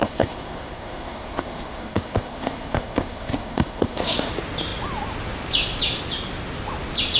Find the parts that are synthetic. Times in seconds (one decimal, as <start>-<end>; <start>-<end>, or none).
0.0-4.3